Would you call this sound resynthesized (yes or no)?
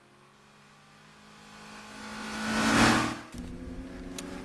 no